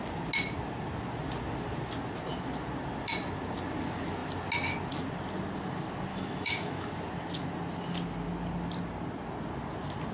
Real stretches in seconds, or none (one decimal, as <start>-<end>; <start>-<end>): 0.0-6.1; 6.9-10.1